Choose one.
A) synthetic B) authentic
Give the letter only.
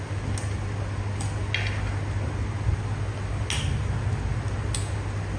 B